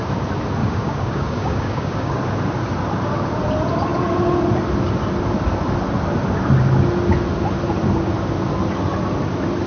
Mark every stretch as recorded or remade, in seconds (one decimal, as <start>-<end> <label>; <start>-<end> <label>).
0.0-0.6 recorded; 0.6-2.1 remade; 2.1-9.7 recorded